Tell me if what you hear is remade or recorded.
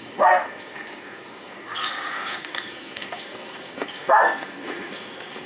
remade